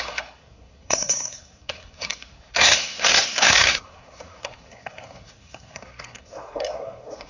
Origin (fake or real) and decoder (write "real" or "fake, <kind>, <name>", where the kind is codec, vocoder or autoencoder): fake, codec, SNAC